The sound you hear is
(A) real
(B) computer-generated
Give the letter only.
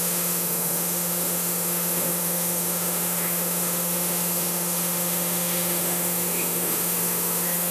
B